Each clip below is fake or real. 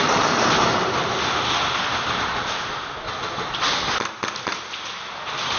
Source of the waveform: real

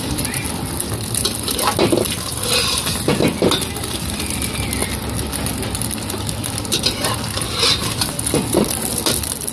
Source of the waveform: real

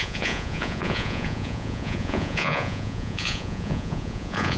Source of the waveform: fake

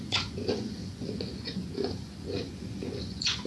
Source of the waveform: fake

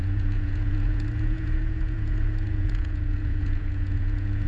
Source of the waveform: fake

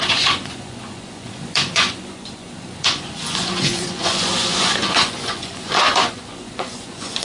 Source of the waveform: fake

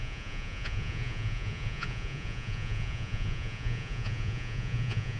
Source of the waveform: fake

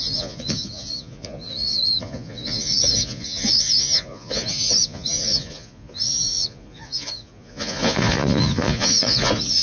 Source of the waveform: fake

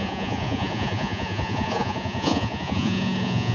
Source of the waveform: fake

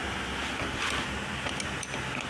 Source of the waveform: real